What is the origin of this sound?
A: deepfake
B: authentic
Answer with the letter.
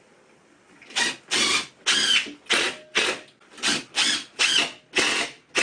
B